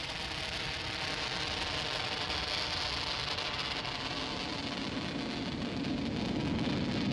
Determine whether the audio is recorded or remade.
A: recorded